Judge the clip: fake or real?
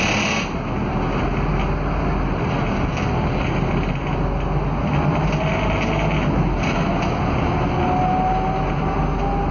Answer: real